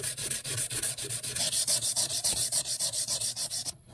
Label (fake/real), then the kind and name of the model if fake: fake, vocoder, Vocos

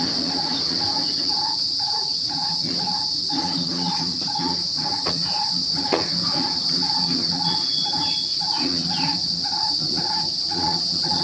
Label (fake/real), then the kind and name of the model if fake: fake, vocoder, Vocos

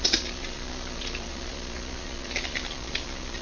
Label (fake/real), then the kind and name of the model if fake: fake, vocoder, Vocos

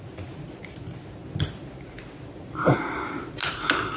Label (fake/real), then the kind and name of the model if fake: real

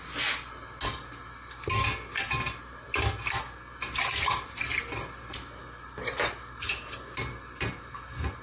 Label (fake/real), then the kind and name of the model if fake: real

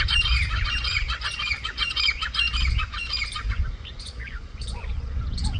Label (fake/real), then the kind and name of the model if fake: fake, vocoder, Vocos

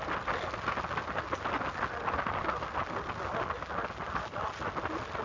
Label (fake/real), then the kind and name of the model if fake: real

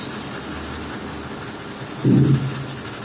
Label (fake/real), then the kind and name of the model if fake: real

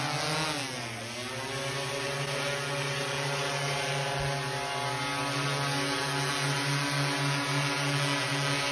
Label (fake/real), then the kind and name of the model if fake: real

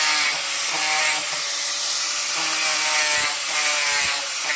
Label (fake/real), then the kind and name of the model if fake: real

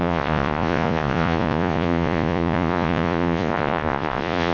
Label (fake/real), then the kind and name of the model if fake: fake, vocoder, Vocos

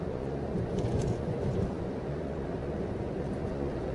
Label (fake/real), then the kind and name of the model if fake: fake, vocoder, Vocos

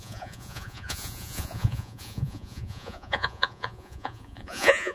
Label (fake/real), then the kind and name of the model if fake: fake, vocoder, Vocos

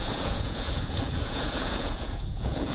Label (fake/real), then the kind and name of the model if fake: fake, vocoder, Vocos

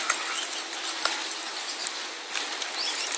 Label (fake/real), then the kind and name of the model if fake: real